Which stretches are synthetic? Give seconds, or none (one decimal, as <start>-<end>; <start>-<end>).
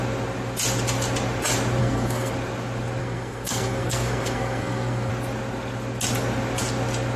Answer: 1.8-2.3; 3.0-5.1